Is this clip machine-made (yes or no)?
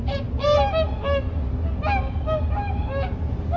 no